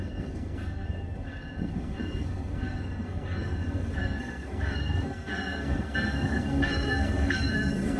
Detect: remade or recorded remade